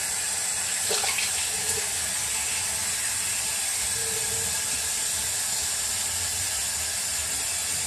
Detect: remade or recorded recorded